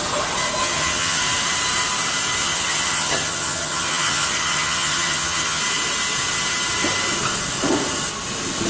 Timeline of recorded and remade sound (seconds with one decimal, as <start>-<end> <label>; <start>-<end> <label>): 0.0-0.6 recorded; 0.6-1.2 remade; 1.2-2.4 recorded; 2.4-5.6 remade; 5.6-8.7 recorded